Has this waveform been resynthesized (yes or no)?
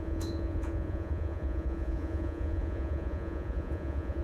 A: yes